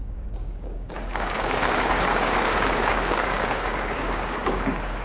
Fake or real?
fake